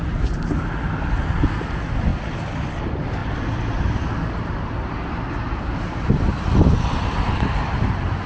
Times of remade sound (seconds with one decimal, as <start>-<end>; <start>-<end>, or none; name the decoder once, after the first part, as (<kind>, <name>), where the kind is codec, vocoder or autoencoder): none